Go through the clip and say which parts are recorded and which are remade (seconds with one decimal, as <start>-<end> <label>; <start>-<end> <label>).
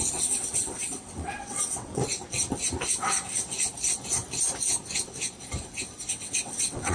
0.0-2.0 remade; 2.0-6.1 recorded; 6.1-6.9 remade